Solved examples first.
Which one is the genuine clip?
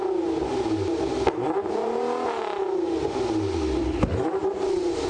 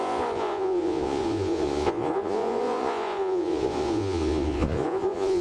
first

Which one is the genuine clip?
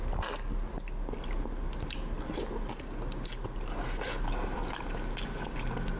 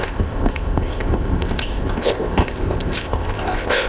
first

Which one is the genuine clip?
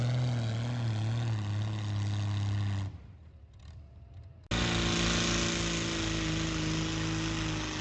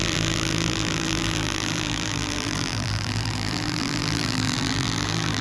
first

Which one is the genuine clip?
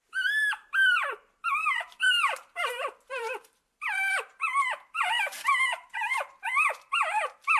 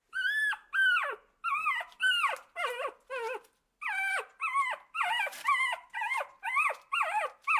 second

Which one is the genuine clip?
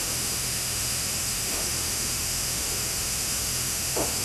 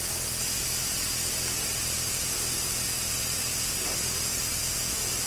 second